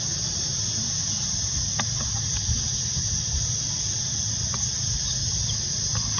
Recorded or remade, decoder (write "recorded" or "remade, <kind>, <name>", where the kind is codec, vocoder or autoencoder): recorded